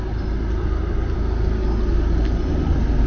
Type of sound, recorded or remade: recorded